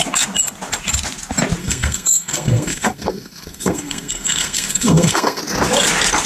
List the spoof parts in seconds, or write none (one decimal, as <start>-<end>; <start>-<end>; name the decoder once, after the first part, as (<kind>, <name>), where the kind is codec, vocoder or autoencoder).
1.6-5.4 (codec, SNAC)

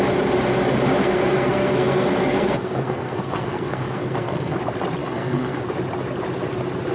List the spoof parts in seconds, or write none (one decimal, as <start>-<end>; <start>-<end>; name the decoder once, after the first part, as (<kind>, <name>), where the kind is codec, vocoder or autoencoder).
1.0-4.6 (codec, SNAC); 5.0-5.6